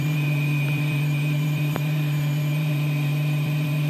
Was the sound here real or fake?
fake